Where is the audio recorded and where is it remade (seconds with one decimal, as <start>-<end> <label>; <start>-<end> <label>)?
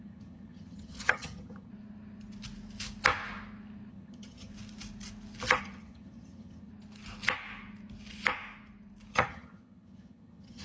0.0-1.7 remade; 1.7-3.9 recorded; 3.9-4.5 remade; 4.5-5.6 recorded; 5.6-6.7 remade; 6.7-9.1 recorded; 9.1-10.6 remade